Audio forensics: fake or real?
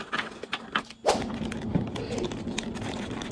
real